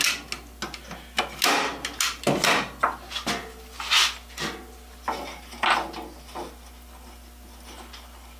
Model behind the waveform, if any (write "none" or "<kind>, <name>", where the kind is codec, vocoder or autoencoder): none